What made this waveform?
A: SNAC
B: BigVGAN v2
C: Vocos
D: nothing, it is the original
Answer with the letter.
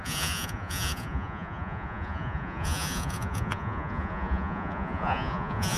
C